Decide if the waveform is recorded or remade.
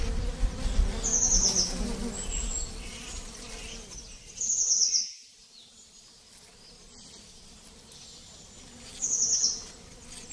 recorded